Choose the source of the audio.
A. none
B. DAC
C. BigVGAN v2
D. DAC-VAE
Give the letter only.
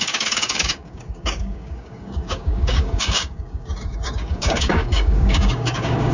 B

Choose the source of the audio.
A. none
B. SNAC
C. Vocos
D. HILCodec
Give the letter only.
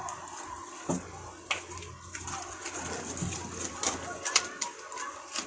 A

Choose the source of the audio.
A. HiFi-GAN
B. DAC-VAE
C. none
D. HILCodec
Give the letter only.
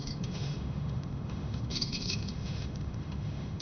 B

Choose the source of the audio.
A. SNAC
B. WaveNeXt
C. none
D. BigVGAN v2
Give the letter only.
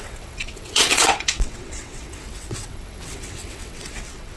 B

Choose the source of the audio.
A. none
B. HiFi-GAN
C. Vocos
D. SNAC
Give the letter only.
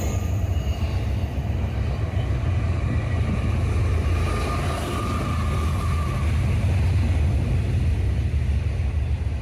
A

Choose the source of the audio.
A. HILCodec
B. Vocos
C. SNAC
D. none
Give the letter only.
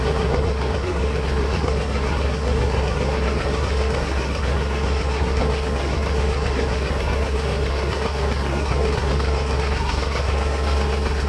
C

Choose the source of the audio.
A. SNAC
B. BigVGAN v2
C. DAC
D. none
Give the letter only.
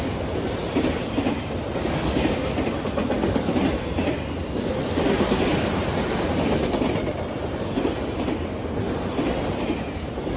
D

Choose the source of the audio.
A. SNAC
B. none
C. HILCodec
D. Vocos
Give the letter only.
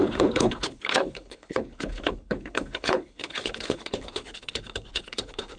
C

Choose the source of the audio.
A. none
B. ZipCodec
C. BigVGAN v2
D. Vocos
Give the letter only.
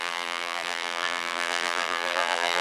C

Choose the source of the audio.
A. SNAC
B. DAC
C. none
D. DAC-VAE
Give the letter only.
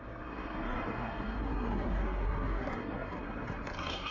A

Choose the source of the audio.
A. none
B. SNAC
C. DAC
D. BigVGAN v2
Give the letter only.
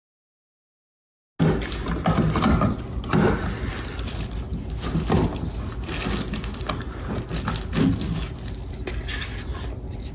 A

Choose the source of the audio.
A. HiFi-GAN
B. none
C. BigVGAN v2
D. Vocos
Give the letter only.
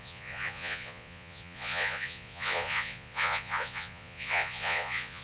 D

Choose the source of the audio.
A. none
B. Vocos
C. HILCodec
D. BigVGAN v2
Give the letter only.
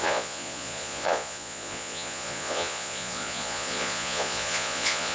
B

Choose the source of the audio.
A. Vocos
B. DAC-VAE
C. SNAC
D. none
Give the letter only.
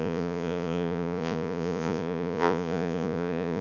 A